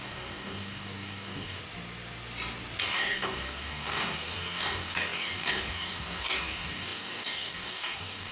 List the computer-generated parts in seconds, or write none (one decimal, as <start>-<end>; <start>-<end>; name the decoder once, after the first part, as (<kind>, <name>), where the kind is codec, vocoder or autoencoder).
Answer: 0.0-1.6 (codec, DAC); 2.8-8.3